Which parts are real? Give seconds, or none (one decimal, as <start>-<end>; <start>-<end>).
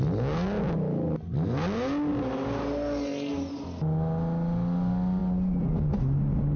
0.0-6.6